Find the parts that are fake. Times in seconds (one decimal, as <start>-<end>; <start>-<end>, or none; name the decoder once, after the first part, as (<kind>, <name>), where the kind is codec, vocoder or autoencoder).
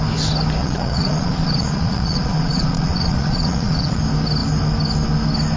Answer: 0.6-4.0 (vocoder, Vocos)